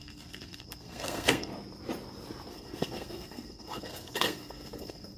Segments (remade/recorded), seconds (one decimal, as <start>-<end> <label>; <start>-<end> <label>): 0.0-1.5 remade; 1.5-2.5 recorded; 2.5-5.2 remade